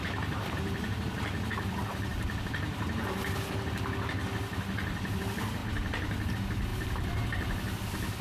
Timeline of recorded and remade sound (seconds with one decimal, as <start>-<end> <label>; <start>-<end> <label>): 0.0-5.6 remade; 5.6-6.3 recorded; 6.3-6.7 remade; 6.7-8.2 recorded